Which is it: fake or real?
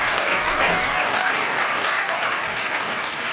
fake